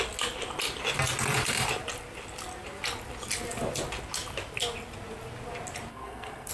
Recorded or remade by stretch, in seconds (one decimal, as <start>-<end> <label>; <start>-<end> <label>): 0.0-5.9 recorded; 5.9-6.5 remade